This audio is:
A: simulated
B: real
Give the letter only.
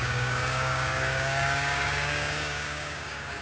A